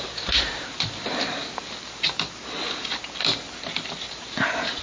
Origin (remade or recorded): recorded